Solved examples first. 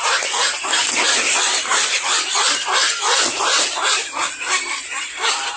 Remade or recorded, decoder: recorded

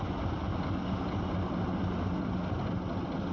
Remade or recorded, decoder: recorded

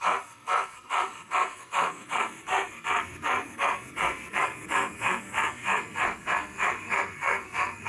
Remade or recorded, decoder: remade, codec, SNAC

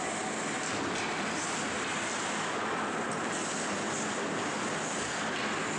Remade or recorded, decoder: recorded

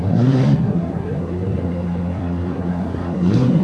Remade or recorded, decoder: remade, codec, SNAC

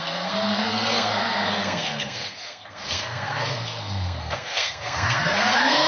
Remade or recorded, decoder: remade, codec, SNAC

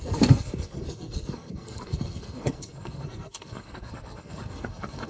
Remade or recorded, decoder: remade, codec, SNAC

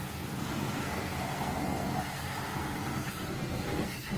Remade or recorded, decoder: remade, codec, SNAC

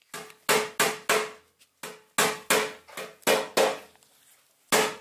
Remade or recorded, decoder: recorded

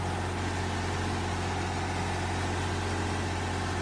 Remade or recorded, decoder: recorded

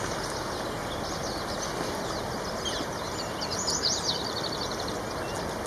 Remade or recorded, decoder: recorded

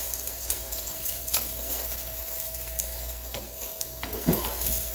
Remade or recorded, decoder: remade, codec, SNAC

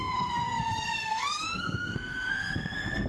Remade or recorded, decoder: remade, codec, SNAC